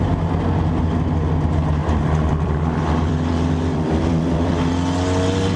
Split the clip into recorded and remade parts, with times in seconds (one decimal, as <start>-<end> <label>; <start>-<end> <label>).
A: 0.0-1.8 recorded; 1.8-4.5 remade; 4.5-5.6 recorded